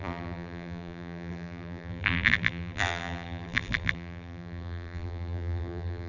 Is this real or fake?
fake